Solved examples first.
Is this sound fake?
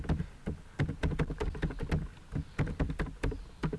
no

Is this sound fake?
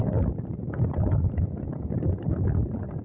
no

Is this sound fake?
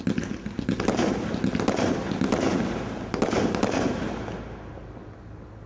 no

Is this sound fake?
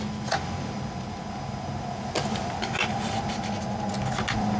no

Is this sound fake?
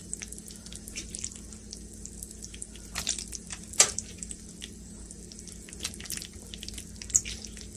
no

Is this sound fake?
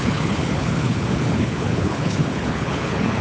yes